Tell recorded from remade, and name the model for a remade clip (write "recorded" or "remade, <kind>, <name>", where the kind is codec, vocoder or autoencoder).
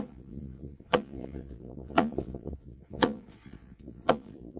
remade, vocoder, Vocos